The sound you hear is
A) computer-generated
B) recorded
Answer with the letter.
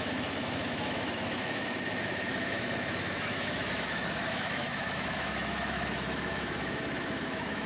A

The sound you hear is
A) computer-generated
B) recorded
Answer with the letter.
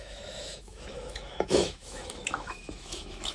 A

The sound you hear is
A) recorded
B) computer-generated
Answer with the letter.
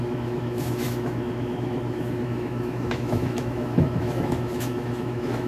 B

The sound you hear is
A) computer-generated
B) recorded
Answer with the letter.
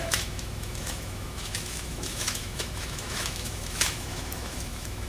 A